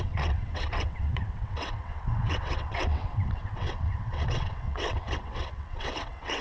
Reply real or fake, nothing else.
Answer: fake